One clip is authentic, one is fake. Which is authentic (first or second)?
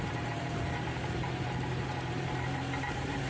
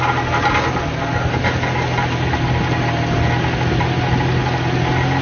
second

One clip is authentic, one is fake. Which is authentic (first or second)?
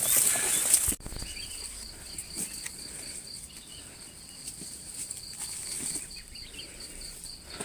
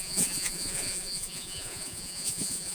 first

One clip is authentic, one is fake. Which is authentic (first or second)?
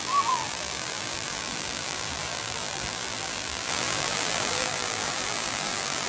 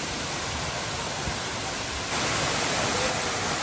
second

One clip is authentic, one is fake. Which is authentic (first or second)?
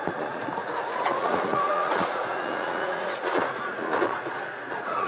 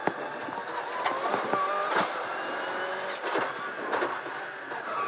second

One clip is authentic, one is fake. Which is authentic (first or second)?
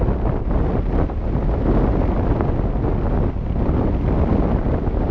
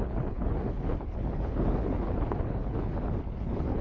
first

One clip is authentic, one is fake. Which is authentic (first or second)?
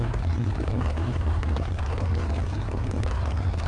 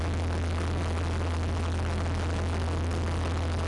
second